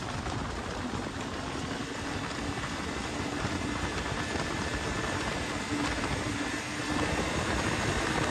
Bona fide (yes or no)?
yes